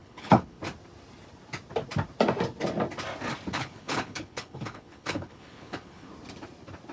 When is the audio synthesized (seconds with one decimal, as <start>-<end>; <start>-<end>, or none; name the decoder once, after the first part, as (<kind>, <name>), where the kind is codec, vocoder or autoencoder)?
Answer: 0.0-0.6 (codec, HILCodec); 3.5-6.1